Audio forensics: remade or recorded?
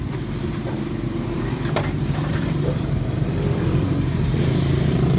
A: remade